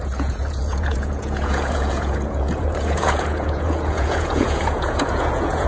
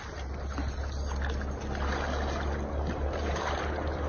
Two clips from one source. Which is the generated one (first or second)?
first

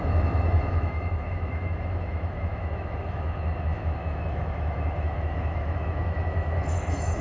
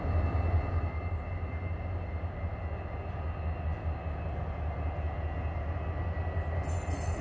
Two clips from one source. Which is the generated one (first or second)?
first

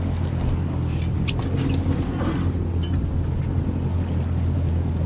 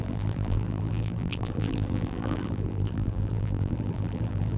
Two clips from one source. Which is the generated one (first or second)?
second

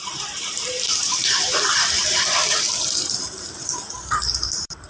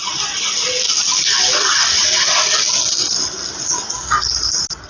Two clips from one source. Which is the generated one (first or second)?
first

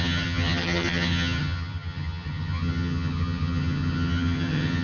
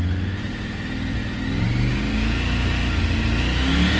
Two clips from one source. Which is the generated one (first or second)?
first